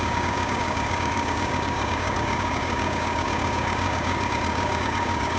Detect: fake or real fake